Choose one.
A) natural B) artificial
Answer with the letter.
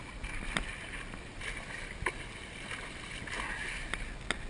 A